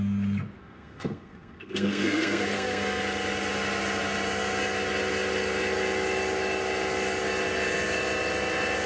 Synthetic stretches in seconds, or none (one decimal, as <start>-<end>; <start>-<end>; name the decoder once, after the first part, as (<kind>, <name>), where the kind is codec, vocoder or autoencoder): 0.6-3.0 (codec, SNAC)